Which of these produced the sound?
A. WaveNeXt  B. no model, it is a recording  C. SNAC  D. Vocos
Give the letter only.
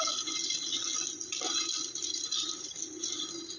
B